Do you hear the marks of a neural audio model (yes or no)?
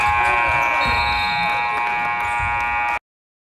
no